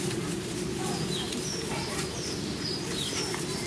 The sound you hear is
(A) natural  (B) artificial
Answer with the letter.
A